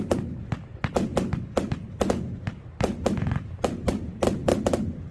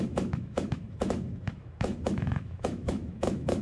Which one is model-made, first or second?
second